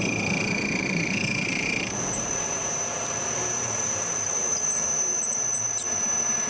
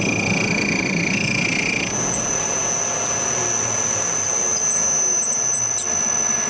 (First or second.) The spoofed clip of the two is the first